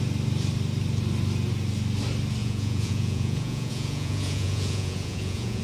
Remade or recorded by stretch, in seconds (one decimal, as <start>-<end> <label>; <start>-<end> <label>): 0.0-2.4 recorded; 2.4-5.6 remade

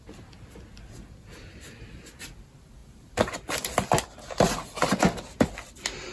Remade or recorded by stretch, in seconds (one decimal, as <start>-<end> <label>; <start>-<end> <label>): 0.0-6.1 recorded